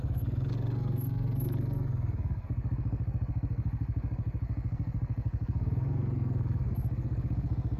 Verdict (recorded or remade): remade